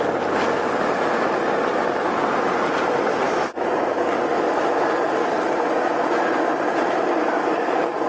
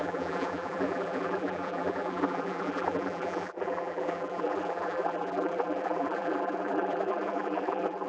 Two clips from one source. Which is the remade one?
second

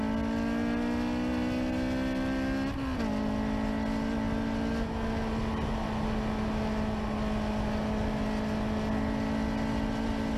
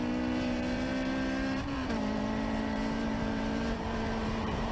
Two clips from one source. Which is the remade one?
second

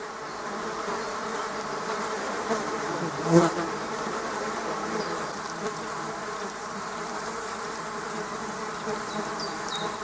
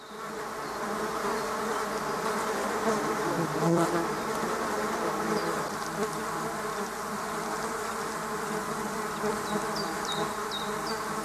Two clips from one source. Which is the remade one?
first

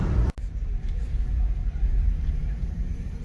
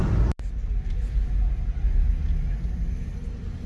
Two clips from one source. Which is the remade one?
first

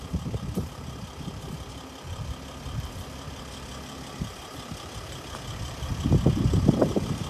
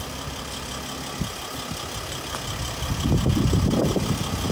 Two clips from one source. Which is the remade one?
first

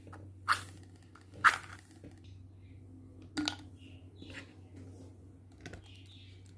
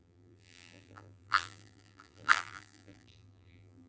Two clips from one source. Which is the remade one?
second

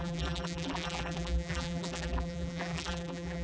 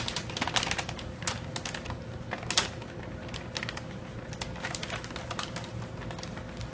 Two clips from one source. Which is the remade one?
first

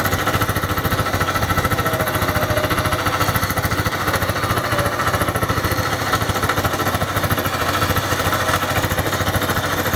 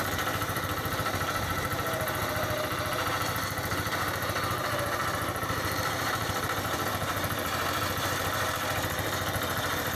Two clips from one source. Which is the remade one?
second